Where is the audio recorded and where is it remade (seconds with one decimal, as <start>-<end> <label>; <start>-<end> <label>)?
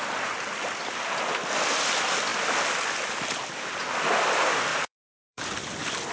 0.0-4.7 recorded; 4.7-5.4 remade; 5.4-6.1 recorded